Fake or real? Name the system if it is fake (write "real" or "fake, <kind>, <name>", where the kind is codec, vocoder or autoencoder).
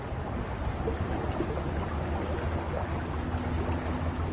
real